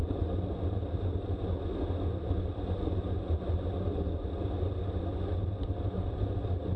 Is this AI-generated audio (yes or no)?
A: no